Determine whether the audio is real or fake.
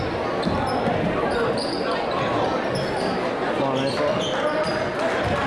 real